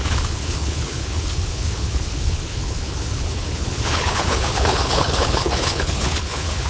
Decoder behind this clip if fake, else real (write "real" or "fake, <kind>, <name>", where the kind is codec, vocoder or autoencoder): fake, codec, HILCodec